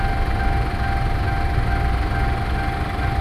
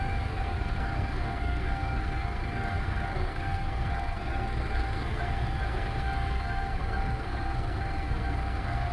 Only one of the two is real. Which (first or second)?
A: first